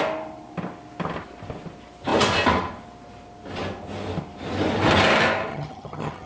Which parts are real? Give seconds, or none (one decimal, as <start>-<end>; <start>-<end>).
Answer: 0.0-5.5